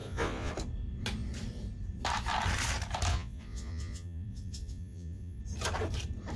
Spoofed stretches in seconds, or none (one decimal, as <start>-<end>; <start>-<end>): 0.0-0.5; 3.1-5.4

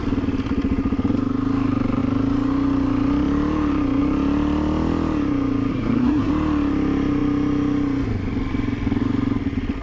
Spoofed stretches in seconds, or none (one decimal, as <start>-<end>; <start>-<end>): 5.7-6.3